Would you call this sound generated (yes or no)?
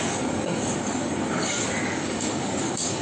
yes